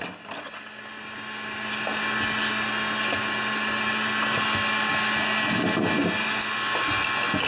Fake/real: real